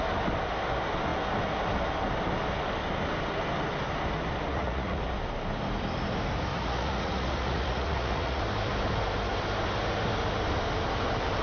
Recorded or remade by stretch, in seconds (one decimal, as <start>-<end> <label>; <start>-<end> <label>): 0.0-4.5 recorded; 4.5-5.0 remade; 5.0-6.5 recorded; 6.5-8.4 remade; 8.4-11.4 recorded